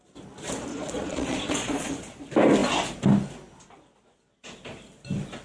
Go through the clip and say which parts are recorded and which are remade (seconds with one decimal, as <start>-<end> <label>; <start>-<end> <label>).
0.0-0.7 recorded; 0.7-1.9 remade; 1.9-5.4 recorded